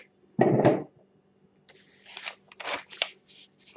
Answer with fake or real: real